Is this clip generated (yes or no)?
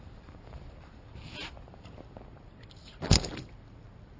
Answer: no